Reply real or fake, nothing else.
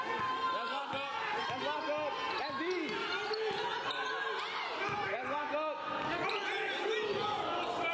real